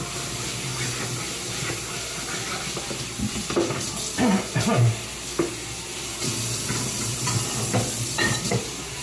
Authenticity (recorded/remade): recorded